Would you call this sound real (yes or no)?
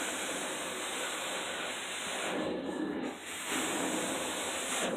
yes